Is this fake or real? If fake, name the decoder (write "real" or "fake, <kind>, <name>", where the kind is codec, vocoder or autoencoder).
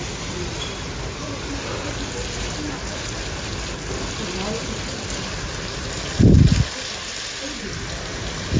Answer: real